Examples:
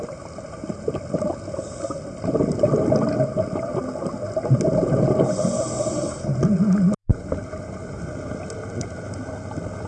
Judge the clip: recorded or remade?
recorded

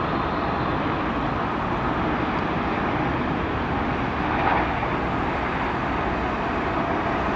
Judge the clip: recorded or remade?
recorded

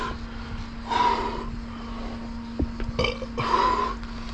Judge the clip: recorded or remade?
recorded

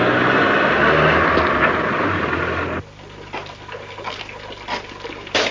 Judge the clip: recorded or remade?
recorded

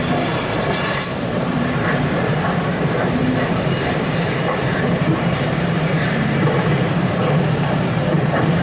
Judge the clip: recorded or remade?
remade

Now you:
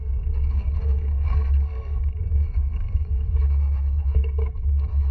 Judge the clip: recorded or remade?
remade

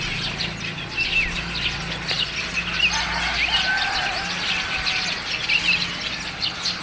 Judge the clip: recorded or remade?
recorded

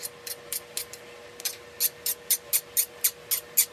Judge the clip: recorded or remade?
recorded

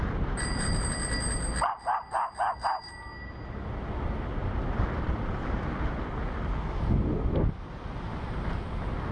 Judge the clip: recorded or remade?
recorded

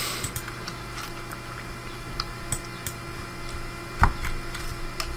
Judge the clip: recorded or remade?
recorded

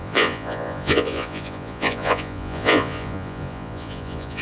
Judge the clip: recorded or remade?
remade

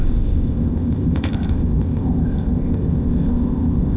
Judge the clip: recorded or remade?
remade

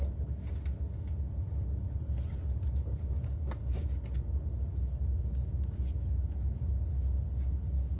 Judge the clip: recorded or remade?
recorded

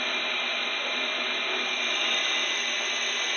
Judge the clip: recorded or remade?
recorded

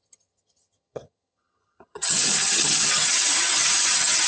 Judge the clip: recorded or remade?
remade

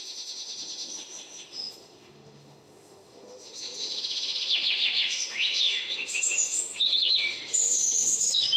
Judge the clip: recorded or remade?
remade